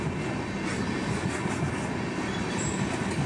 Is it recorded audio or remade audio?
recorded